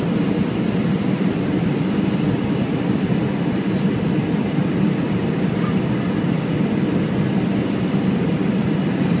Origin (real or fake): real